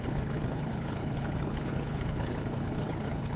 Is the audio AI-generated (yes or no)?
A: yes